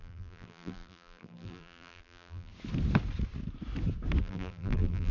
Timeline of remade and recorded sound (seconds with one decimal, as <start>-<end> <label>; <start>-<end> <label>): 0.0-2.5 remade; 2.5-4.2 recorded; 4.2-5.1 remade

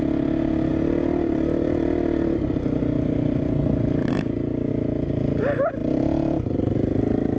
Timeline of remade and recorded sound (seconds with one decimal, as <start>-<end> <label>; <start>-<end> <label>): 0.0-0.7 recorded; 0.7-4.7 remade; 4.7-5.8 recorded; 5.8-6.7 remade; 6.7-7.4 recorded

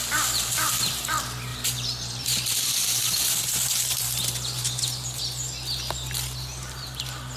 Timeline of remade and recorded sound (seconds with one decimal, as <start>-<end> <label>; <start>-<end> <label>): 0.0-1.5 recorded; 1.5-5.2 remade; 5.2-7.4 recorded

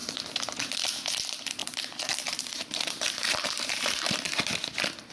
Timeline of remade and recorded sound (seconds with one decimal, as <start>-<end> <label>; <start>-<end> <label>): 0.0-0.6 remade; 0.6-1.6 recorded; 1.6-4.2 remade; 4.2-5.1 recorded

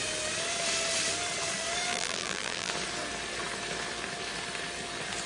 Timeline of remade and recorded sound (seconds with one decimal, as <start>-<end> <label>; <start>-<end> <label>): 0.0-1.9 recorded; 1.9-2.7 remade; 2.7-5.3 recorded